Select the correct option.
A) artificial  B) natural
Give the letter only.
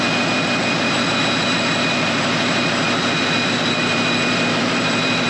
A